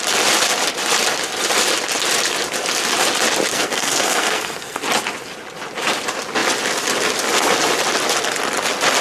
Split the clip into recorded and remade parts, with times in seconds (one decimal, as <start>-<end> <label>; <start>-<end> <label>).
0.0-3.5 recorded; 3.5-4.8 remade; 4.8-9.0 recorded

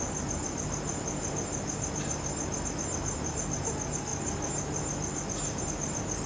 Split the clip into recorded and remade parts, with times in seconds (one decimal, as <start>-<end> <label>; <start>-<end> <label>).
0.0-6.3 recorded

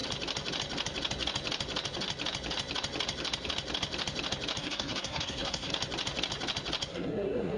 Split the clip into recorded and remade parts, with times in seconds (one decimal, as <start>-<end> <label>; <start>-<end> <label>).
0.0-4.6 recorded; 4.6-5.7 remade; 5.7-6.9 recorded; 6.9-7.6 remade

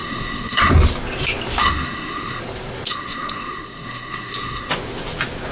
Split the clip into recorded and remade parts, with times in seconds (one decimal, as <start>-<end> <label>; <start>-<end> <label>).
0.0-0.7 remade; 0.7-1.6 recorded; 1.6-2.4 remade; 2.4-2.9 recorded; 2.9-4.7 remade; 4.7-5.5 recorded